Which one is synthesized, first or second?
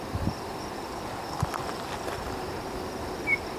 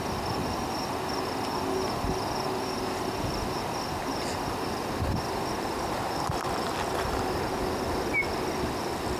first